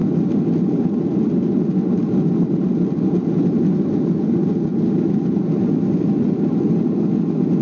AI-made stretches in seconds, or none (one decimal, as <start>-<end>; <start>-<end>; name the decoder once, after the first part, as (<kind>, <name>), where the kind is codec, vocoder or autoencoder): none